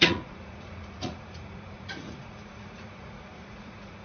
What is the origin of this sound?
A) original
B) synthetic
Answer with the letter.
B